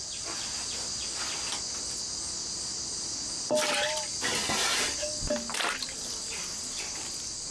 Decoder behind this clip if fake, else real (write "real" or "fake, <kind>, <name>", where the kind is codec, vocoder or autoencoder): real